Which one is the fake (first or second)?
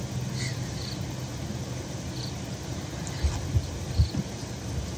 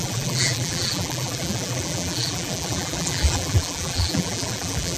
second